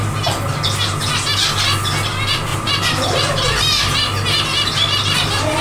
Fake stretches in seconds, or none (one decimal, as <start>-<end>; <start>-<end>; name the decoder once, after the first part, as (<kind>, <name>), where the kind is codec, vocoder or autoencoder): 2.5-3.2 (vocoder, BigVGAN v2)